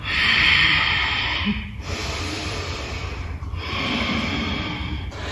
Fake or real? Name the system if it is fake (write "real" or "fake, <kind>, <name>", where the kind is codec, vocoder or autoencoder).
fake, vocoder, BigVGAN v2